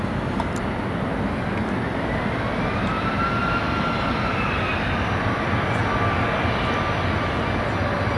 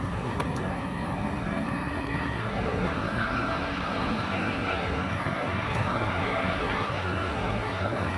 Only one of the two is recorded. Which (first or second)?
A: first